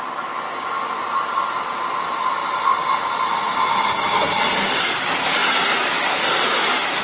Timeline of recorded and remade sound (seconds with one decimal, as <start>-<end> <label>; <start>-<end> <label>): 0.0-7.0 recorded